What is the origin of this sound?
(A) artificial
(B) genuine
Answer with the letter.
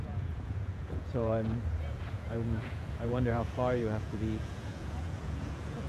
A